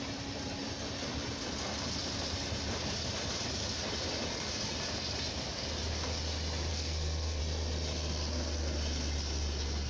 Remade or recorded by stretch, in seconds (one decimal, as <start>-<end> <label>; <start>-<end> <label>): 0.0-6.7 recorded; 6.7-7.4 remade; 7.4-9.9 recorded